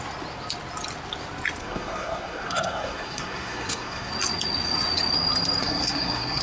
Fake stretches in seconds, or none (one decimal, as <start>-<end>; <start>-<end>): 1.6-4.1; 5.6-6.4